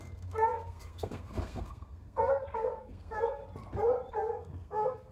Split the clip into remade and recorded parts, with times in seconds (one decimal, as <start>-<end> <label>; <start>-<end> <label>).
0.0-3.4 remade; 3.4-4.1 recorded; 4.1-5.1 remade

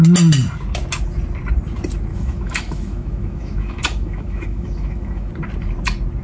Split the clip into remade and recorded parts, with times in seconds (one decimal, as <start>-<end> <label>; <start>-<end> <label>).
0.0-2.1 recorded; 2.1-5.3 remade; 5.3-6.2 recorded

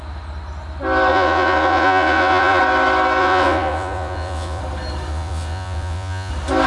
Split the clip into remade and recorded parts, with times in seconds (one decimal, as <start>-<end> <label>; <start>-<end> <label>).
0.0-1.1 recorded; 1.1-2.6 remade; 2.6-3.2 recorded; 3.2-4.6 remade; 4.6-5.1 recorded; 5.1-6.3 remade; 6.3-6.7 recorded

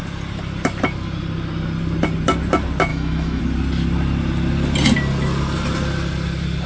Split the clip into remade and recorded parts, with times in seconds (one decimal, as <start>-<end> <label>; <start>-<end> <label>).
0.0-2.9 recorded; 2.9-3.4 remade; 3.4-6.7 recorded

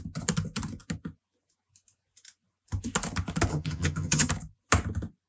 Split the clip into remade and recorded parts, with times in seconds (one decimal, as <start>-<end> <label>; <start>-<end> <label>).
0.0-3.5 recorded; 3.5-4.3 remade; 4.3-5.3 recorded

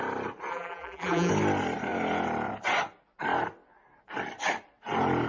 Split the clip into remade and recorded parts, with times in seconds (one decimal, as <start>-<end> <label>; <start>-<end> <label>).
0.0-0.5 recorded; 0.5-1.3 remade; 1.3-5.3 recorded

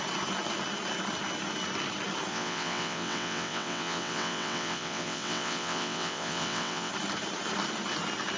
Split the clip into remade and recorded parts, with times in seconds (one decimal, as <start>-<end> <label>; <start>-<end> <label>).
0.0-2.3 recorded; 2.3-6.9 remade; 6.9-8.4 recorded

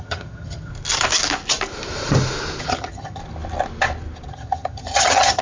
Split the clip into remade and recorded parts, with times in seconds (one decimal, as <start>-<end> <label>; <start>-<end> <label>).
0.0-0.7 remade; 0.7-2.6 recorded; 2.6-3.2 remade; 3.2-4.3 recorded; 4.3-5.4 remade